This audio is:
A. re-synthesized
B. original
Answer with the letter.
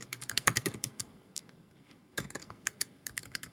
A